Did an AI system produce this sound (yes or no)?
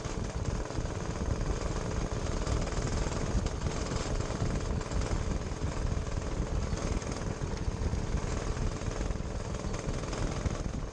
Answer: no